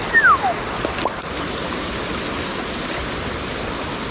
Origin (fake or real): real